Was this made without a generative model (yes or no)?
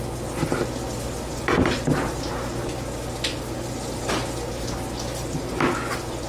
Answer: yes